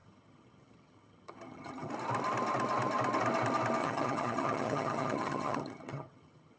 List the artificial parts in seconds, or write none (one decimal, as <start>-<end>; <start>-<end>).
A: 0.0-1.9; 3.8-6.6